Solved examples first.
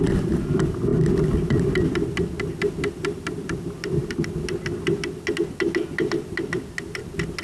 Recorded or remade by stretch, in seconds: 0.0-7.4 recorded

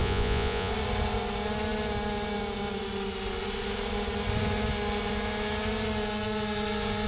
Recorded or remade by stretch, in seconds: 0.0-0.7 remade; 0.7-7.1 recorded

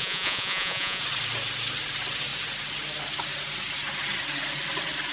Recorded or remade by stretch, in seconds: 0.0-1.0 remade; 1.0-5.1 recorded

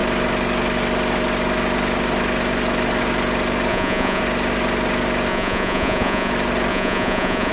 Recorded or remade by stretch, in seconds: 0.0-3.7 recorded; 3.7-4.2 remade; 4.2-5.3 recorded; 5.3-6.3 remade; 6.3-6.7 recorded; 6.7-7.5 remade

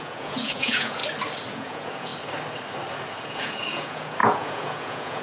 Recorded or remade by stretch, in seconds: 0.0-1.0 remade; 1.0-1.5 recorded; 1.5-2.1 remade; 2.1-3.2 recorded; 3.2-5.2 remade

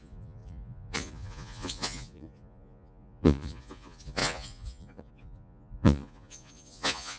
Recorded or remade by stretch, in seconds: 0.0-7.2 remade